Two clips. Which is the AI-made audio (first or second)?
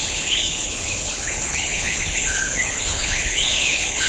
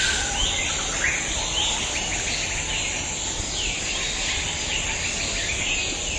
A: first